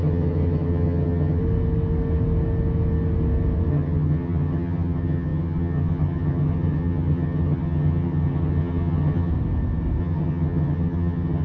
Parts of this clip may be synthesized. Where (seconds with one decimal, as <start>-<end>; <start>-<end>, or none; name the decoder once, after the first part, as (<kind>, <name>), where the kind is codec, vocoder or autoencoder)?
0.0-1.4 (vocoder, HiFi-GAN); 3.7-9.3; 10.0-11.4